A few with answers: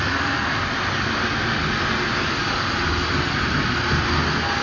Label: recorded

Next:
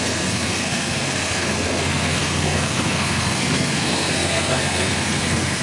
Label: remade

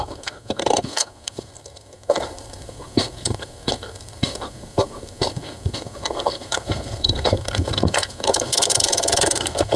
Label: remade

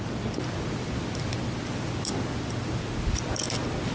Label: recorded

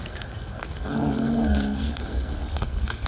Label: remade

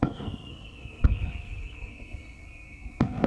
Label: remade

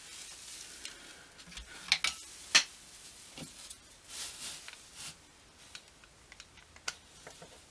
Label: recorded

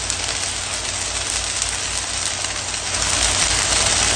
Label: recorded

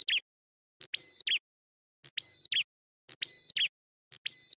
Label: recorded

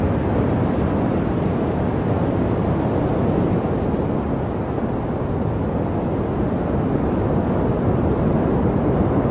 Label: recorded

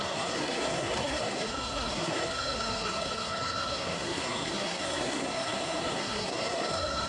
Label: remade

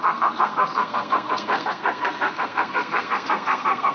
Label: remade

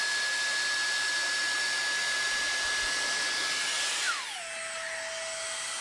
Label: recorded